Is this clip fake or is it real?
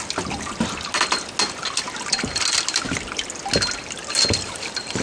real